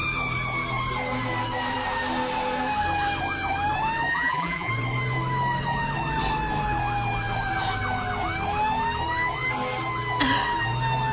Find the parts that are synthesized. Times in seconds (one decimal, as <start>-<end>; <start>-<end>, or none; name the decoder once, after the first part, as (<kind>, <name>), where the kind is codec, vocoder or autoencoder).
4.1-4.7 (vocoder, BigVGAN v2)